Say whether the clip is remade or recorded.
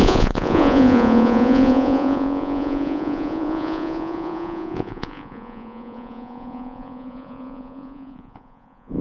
remade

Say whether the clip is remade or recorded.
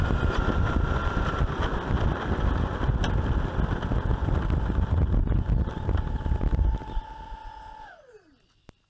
recorded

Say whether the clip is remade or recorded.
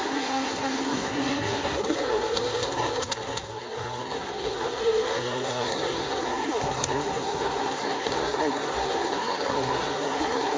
remade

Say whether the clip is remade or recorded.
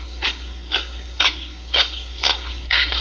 remade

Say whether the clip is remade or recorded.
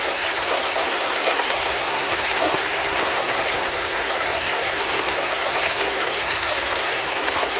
remade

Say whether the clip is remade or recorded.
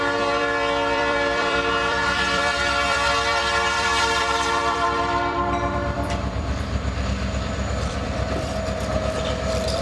remade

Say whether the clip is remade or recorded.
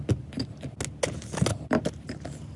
recorded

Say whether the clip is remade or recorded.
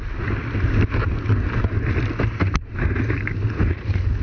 recorded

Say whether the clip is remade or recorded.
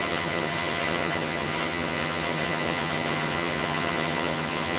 remade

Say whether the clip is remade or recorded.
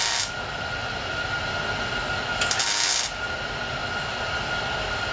recorded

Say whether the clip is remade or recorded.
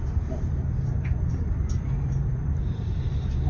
remade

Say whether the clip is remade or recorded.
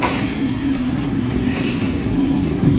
remade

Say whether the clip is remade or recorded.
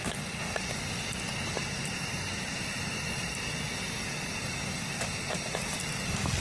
recorded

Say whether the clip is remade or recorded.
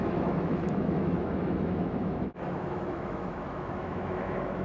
remade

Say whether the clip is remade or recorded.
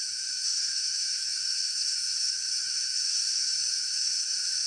remade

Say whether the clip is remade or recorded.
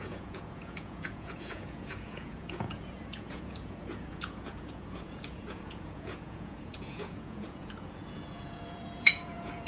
remade